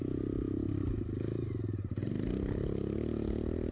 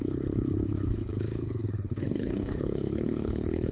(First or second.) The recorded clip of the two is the first